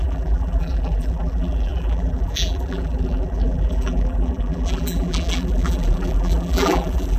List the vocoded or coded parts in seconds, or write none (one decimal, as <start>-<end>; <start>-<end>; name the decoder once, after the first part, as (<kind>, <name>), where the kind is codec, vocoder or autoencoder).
0.0-7.2 (vocoder, BigVGAN v2)